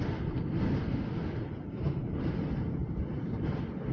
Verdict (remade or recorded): remade